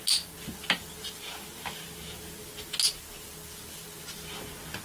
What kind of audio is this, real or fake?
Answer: real